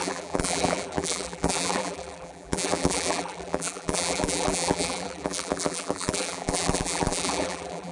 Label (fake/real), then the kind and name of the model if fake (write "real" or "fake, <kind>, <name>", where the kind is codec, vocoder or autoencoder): fake, vocoder, BigVGAN v2